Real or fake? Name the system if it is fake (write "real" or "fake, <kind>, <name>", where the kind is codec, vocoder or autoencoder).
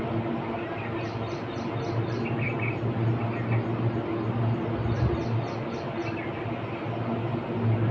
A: real